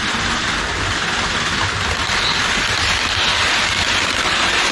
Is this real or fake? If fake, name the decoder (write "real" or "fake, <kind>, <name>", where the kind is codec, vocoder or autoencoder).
real